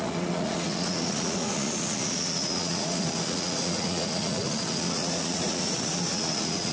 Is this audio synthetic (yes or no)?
yes